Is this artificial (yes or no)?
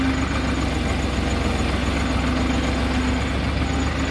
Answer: no